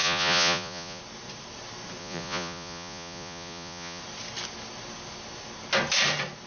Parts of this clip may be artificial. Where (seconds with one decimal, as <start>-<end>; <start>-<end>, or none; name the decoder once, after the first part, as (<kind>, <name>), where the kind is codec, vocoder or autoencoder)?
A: 0.0-1.0 (vocoder, Vocos); 2.0-4.0